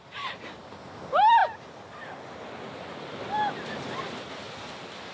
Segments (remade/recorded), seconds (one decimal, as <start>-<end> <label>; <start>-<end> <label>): 0.0-5.1 recorded